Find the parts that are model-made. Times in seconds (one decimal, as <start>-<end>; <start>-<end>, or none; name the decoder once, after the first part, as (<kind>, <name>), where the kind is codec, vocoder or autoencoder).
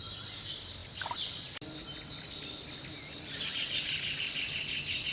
none